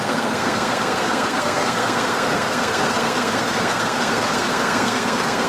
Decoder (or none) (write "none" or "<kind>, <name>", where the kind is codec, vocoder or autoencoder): codec, SNAC